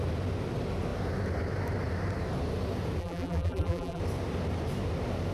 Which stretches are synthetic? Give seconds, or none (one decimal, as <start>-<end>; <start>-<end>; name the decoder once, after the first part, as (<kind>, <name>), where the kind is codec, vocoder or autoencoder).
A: 3.0-4.0 (vocoder, BigVGAN v2)